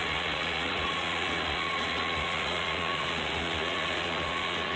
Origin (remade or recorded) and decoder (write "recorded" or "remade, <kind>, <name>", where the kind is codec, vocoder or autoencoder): remade, vocoder, Vocos